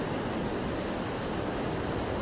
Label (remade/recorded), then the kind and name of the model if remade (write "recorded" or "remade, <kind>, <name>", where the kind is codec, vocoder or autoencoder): recorded